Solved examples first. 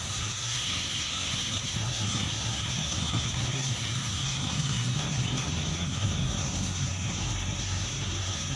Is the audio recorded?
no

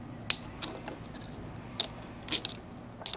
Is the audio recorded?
yes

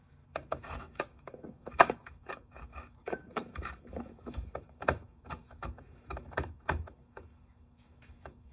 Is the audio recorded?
no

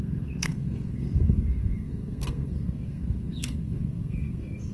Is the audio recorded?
no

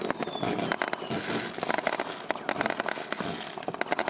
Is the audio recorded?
yes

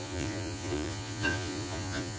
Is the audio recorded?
no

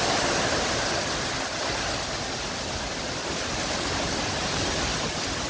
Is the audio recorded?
yes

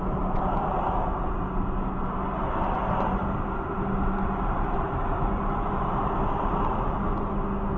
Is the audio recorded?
yes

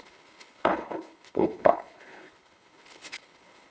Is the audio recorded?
no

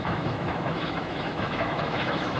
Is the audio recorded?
no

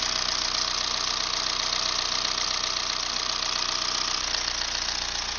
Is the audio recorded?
yes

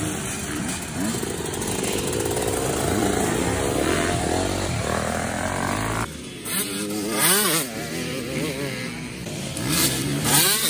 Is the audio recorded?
yes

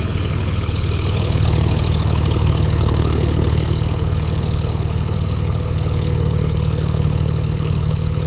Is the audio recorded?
no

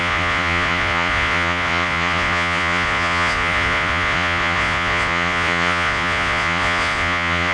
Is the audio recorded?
no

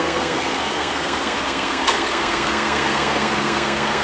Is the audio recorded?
no